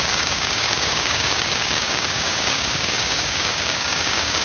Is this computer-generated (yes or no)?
yes